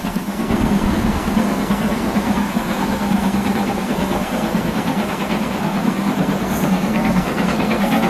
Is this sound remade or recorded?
remade